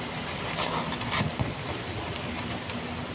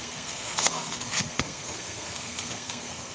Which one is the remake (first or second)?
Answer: second